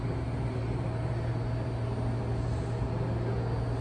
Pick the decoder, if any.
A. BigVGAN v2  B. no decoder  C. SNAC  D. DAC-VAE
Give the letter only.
B